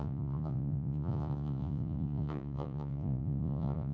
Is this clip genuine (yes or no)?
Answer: no